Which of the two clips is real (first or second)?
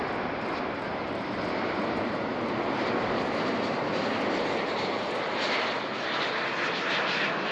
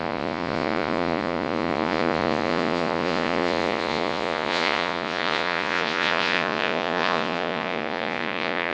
first